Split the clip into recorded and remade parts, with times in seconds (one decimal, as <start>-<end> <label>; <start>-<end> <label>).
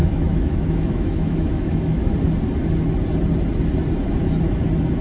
0.0-2.1 remade; 2.1-5.0 recorded